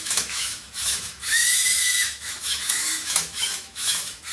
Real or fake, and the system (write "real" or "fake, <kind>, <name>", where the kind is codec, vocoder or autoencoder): fake, autoencoder, DAC-VAE